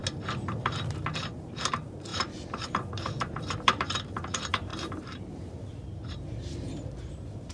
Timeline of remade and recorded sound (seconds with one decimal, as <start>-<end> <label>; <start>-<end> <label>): 0.0-1.2 recorded; 1.2-7.5 remade